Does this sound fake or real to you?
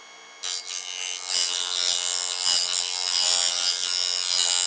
real